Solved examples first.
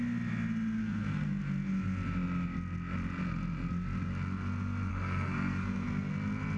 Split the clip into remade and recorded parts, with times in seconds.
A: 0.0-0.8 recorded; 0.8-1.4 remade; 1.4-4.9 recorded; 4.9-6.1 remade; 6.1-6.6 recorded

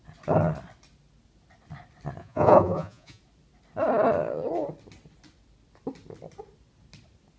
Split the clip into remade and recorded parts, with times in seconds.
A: 0.0-2.2 recorded; 2.2-3.2 remade; 3.2-7.4 recorded

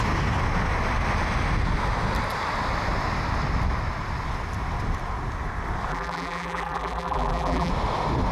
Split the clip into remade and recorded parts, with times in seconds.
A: 0.0-5.9 recorded; 5.9-7.7 remade; 7.7-8.3 recorded

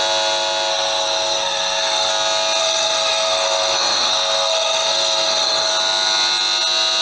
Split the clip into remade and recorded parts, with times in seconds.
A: 0.0-0.7 recorded; 0.7-2.1 remade; 2.1-2.6 recorded; 2.6-5.7 remade; 5.7-7.0 recorded

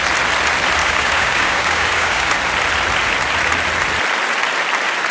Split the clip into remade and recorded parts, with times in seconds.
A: 0.0-0.8 recorded; 0.8-2.3 remade; 2.3-5.1 recorded

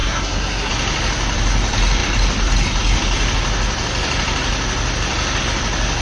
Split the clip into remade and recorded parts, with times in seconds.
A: 0.0-0.7 remade; 0.7-6.0 recorded

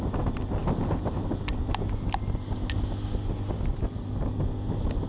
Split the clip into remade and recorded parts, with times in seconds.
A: 0.0-5.1 recorded